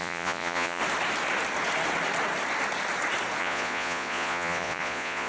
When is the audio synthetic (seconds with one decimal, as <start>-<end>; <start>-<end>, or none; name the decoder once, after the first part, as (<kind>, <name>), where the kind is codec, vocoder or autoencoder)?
0.0-0.8 (vocoder, Vocos); 3.4-5.3